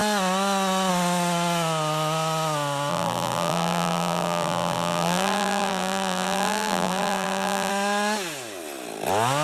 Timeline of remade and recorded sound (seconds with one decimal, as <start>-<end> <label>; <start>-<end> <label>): 0.0-2.9 recorded; 2.9-7.7 remade; 7.7-9.4 recorded

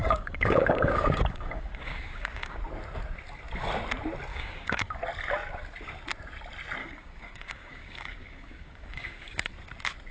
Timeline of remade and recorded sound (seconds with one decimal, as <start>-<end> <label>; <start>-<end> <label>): 0.0-2.6 remade; 2.6-4.3 recorded; 4.3-5.0 remade; 5.0-6.8 recorded; 6.8-9.5 remade; 9.5-10.1 recorded